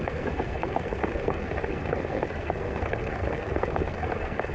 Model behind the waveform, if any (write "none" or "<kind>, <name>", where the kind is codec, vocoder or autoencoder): codec, SNAC